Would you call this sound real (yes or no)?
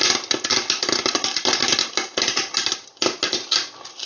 yes